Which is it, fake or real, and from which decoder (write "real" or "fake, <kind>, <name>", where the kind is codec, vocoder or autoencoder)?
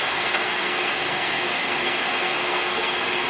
fake, codec, SNAC